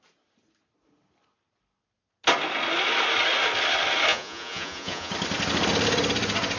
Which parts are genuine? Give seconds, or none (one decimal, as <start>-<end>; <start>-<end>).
0.0-4.1; 5.1-6.6